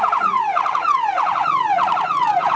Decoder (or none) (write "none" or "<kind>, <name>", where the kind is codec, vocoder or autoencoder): vocoder, Vocos